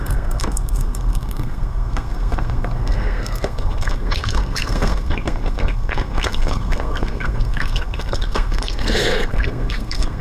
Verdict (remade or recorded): remade